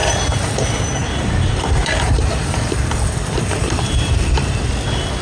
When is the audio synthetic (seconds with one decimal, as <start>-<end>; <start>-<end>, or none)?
1.0-4.1

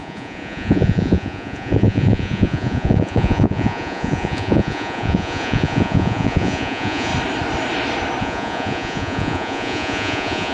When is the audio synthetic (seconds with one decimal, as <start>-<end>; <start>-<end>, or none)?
0.0-7.1; 8.2-10.5

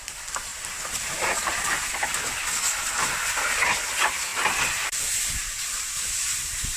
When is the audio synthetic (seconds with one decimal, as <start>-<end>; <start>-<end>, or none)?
0.5-1.9; 4.3-6.8

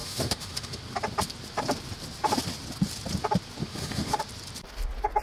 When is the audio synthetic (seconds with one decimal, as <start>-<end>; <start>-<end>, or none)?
0.0-0.8; 3.6-4.2

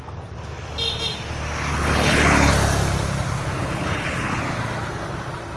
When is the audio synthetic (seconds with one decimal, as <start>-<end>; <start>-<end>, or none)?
1.7-2.5; 3.6-4.4

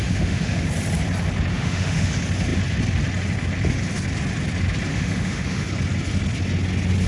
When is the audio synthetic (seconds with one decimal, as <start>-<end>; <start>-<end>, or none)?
0.0-0.7; 1.5-2.1; 4.9-5.7

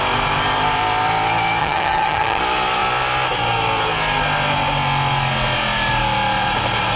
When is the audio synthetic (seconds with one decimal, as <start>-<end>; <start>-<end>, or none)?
1.6-2.4